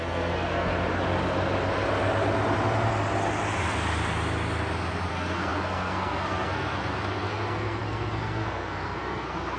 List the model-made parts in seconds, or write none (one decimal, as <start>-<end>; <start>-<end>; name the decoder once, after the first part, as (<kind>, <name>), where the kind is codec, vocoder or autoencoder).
0.0-0.7 (codec, SNAC); 5.1-9.6

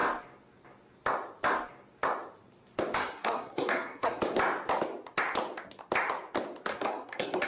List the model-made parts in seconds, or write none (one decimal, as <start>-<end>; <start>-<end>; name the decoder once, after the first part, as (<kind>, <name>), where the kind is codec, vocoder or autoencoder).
3.0-4.2 (codec, SNAC); 6.7-7.5

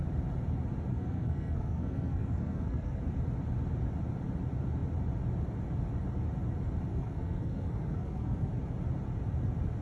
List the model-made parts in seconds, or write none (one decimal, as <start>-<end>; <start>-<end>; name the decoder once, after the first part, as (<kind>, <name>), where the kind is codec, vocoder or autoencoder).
0.9-3.0 (codec, SNAC); 6.9-8.5

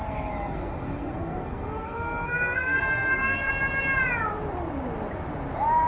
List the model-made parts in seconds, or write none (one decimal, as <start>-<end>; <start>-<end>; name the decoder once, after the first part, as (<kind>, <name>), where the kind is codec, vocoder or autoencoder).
0.0-3.5 (codec, SNAC)

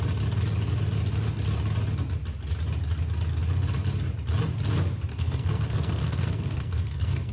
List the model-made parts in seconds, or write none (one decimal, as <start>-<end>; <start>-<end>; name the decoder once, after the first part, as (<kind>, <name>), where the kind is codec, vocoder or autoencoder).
5.1-7.3 (codec, SNAC)